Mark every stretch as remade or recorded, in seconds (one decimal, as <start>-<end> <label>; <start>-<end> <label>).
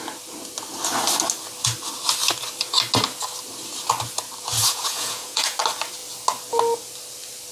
0.0-4.6 recorded; 4.6-5.6 remade; 5.6-7.5 recorded